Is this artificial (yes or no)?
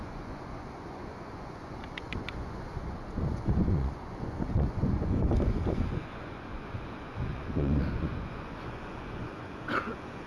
yes